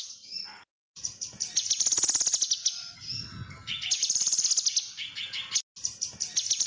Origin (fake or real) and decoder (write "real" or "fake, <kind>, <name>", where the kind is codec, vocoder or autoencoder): real